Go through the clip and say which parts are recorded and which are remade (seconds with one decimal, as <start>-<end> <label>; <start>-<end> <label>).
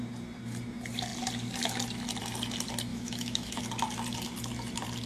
0.0-2.9 recorded; 2.9-3.6 remade; 3.6-5.1 recorded